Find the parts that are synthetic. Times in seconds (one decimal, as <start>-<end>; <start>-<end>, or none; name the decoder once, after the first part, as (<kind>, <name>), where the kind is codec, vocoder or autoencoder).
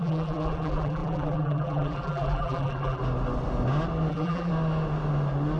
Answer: 0.0-3.0 (vocoder, BigVGAN v2); 4.1-4.5